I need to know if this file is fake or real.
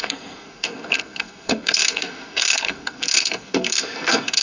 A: fake